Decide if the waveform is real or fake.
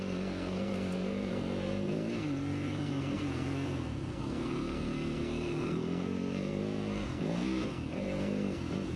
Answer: fake